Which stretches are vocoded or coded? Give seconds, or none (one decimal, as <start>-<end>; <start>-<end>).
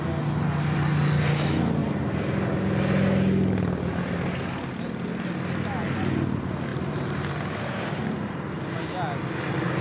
6.7-7.3